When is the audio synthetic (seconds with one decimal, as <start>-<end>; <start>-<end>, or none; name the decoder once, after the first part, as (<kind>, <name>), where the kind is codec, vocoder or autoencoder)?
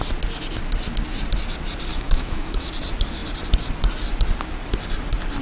1.9-2.7 (autoencoder, DAC-VAE)